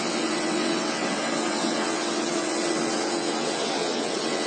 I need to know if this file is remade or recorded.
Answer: remade